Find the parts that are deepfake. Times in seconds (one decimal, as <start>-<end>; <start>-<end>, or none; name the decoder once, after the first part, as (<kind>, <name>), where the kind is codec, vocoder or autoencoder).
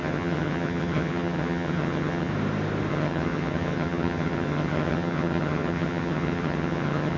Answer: 0.0-2.3 (vocoder, HiFi-GAN); 2.9-7.2